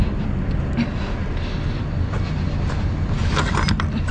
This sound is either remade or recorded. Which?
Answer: recorded